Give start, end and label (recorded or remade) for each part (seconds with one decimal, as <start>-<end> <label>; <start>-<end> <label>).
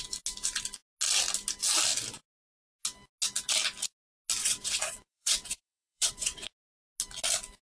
0.0-4.4 recorded; 4.4-6.5 remade; 6.5-7.7 recorded